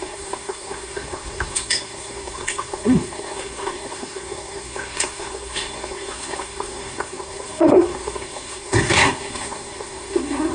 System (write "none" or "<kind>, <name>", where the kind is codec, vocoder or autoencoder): codec, SNAC